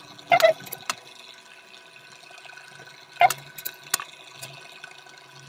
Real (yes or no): yes